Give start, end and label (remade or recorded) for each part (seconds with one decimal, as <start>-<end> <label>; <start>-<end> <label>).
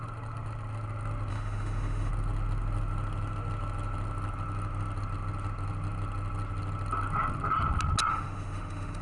0.0-1.3 recorded; 1.3-2.1 remade; 2.1-8.1 recorded; 8.1-9.0 remade